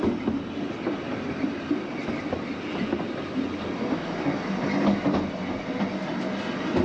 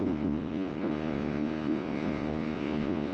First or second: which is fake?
second